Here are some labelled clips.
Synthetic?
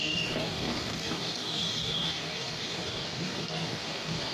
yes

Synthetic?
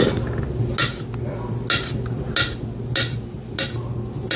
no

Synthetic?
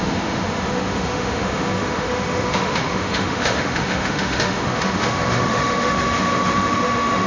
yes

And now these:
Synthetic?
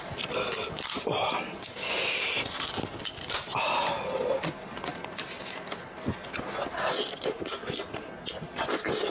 no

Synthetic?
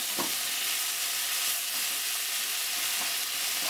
no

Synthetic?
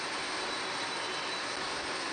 yes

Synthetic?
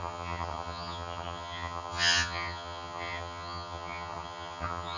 yes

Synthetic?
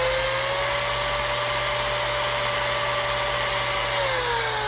no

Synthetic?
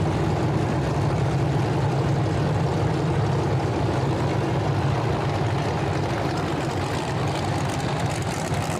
no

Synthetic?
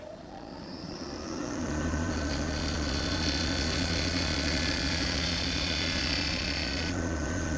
yes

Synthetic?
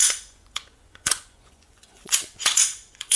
yes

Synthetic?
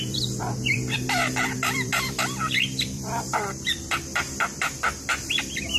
yes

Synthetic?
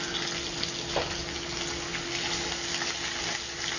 no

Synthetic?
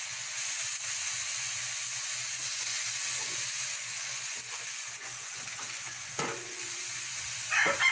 yes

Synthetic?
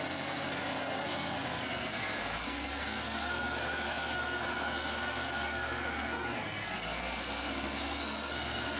yes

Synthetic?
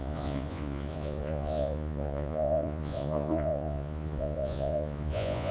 yes